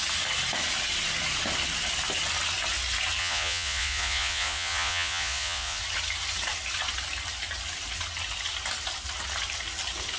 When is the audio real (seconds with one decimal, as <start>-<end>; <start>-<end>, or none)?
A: 0.0-3.2; 5.8-10.2